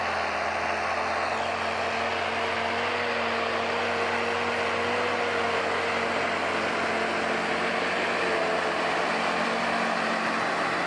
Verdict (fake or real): real